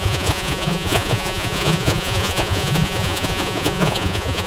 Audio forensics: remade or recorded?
remade